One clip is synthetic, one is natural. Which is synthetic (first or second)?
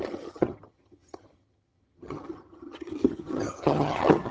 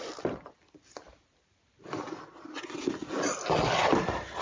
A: first